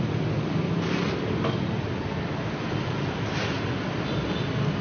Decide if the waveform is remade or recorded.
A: recorded